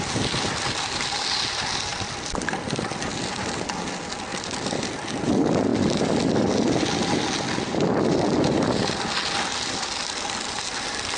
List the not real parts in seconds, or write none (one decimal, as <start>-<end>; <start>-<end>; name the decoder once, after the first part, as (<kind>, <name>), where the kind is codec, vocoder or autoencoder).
none